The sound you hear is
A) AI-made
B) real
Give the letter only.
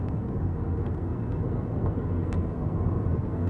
A